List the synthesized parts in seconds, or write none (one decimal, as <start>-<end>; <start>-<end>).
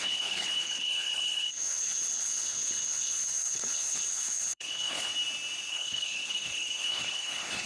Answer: 0.0-5.1; 5.7-7.7